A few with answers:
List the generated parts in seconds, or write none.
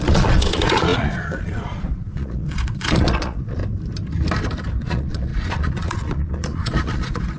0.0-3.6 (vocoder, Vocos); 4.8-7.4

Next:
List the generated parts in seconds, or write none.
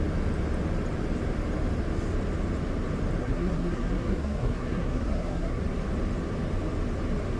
3.2-5.6 (codec, SNAC)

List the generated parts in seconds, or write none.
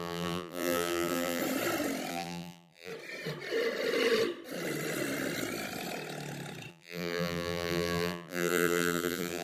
0.0-1.4 (vocoder, BigVGAN v2); 2.1-2.9; 6.7-9.4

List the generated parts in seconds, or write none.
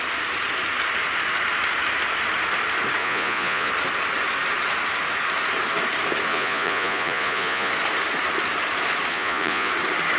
3.0-3.7 (vocoder, Vocos); 6.3-7.7; 9.1-9.7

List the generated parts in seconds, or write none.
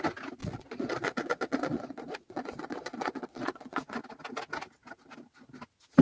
0.4-4.0 (vocoder, Vocos)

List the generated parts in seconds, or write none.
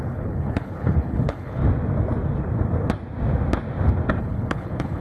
0.0-1.6 (codec, HILCodec); 4.2-5.0